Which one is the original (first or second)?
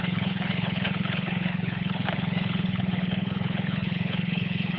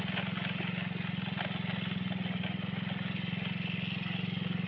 second